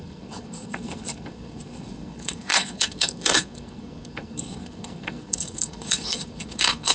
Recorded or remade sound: remade